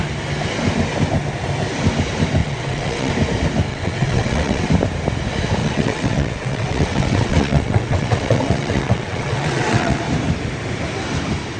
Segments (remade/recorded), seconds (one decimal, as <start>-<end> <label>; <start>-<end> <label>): 0.0-2.4 recorded; 2.4-3.1 remade; 3.1-3.7 recorded; 3.7-4.7 remade; 4.7-5.6 recorded; 5.6-10.0 remade; 10.0-11.6 recorded